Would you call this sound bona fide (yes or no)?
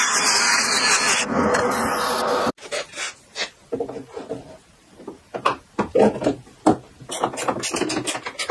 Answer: yes